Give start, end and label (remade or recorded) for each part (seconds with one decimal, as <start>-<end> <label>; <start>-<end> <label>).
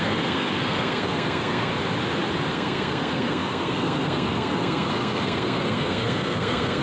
0.0-1.7 remade; 1.7-2.5 recorded; 2.5-6.8 remade